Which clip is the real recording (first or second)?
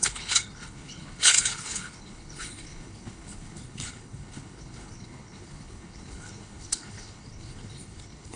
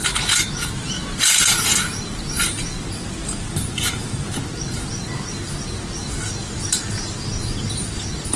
second